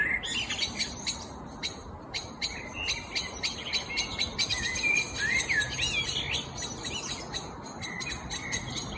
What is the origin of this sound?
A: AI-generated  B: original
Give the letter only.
B